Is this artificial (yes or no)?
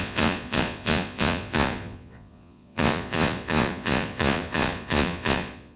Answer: yes